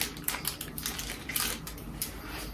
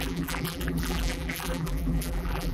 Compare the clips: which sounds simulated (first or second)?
second